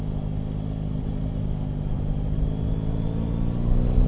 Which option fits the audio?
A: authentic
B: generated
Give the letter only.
A